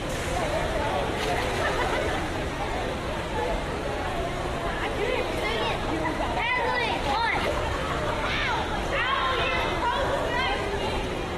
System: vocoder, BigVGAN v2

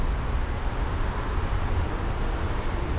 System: none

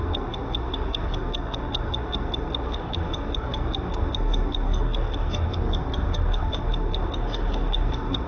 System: codec, SNAC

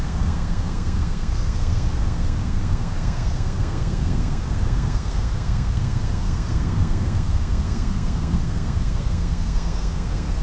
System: codec, SNAC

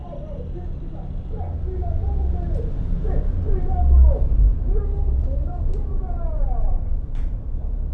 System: none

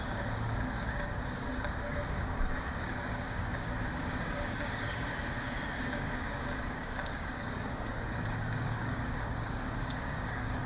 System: codec, DAC